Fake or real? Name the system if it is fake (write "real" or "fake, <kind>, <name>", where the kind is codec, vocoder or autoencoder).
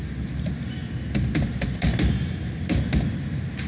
real